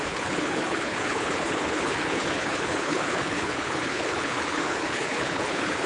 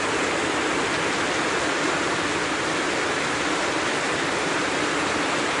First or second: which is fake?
first